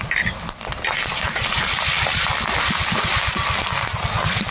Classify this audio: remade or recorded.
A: recorded